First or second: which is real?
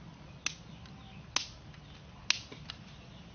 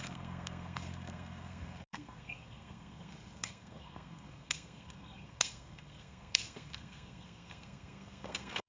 first